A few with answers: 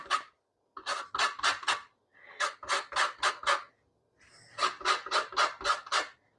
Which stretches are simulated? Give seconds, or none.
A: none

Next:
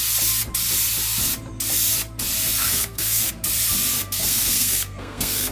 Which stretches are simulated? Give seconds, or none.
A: 2.6-3.3 (codec, SNAC); 4.0-5.5

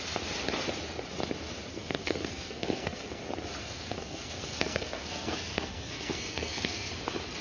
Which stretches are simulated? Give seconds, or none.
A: 1.7-3.2 (codec, SNAC); 3.6-6.9

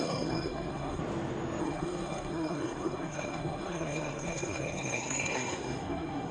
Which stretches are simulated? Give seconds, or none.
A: 0.0-1.0 (codec, SNAC); 1.6-6.3

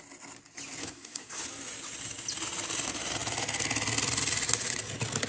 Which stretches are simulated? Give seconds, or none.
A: 0.8-1.4 (codec, SNAC)